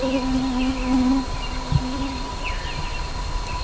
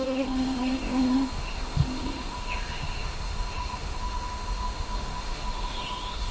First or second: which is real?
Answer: first